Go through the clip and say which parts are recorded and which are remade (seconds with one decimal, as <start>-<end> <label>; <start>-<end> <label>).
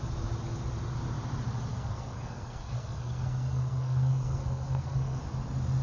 0.0-1.7 recorded; 1.7-5.2 remade; 5.2-5.8 recorded